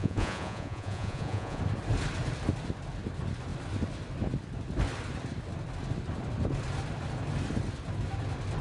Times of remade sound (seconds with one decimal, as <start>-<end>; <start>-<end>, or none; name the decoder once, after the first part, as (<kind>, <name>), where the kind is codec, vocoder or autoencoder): 0.0-1.6 (vocoder, Vocos)